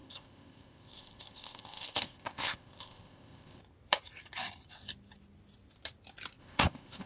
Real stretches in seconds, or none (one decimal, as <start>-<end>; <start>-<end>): 3.6-6.4